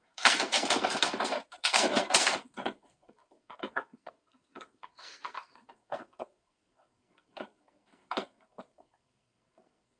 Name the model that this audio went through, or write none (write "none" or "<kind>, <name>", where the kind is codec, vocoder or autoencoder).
codec, SNAC